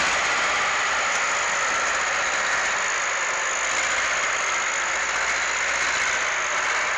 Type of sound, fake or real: real